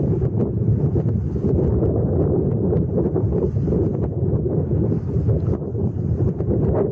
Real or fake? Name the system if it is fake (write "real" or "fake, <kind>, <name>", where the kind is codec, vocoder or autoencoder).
real